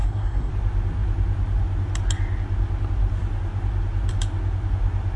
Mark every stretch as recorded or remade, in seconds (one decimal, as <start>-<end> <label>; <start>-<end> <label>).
0.0-0.5 remade; 0.5-5.2 recorded